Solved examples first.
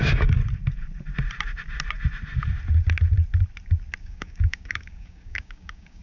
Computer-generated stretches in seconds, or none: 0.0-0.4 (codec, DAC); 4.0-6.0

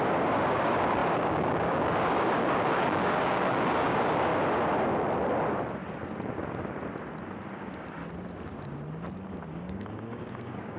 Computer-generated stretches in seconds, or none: 0.0-4.3 (codec, DAC); 7.5-8.0; 9.5-10.8

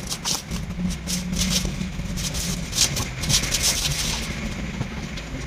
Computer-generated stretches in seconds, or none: none

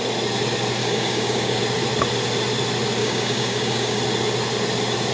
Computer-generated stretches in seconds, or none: 0.8-1.6 (codec, DAC); 3.0-4.0

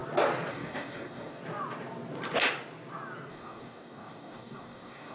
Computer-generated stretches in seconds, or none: 0.5-1.4 (codec, DAC); 3.3-5.1